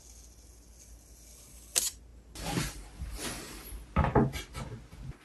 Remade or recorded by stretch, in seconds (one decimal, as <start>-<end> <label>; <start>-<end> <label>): 0.0-5.2 recorded